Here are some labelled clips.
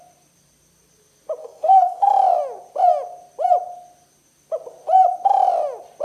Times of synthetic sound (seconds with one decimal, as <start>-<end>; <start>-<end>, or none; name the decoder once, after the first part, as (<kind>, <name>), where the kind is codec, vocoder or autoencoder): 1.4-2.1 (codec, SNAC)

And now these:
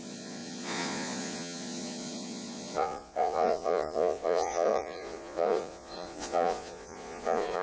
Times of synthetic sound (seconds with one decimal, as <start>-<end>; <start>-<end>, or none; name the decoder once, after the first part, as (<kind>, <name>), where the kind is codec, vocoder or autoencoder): 0.0-7.6 (vocoder, Vocos)

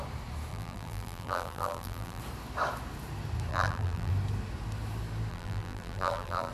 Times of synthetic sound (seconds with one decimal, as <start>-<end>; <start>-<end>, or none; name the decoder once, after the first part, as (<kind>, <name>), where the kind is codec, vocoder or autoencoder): 0.5-2.2 (vocoder, BigVGAN v2); 3.5-4.1; 5.3-6.5

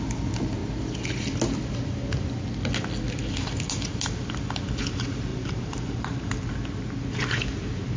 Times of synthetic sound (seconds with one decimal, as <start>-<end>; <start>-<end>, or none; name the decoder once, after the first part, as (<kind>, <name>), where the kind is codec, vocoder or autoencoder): 5.3-6.5 (vocoder, BigVGAN v2)

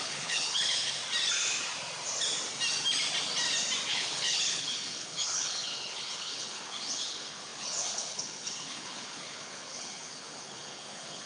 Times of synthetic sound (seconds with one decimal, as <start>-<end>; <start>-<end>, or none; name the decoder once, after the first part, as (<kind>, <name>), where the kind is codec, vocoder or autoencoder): 0.0-1.0 (codec, HILCodec); 3.9-11.3

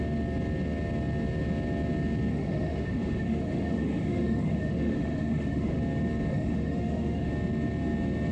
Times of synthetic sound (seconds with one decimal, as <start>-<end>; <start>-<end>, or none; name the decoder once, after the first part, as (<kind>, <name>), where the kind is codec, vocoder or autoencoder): 2.3-5.8 (autoencoder, DAC-VAE); 6.3-7.3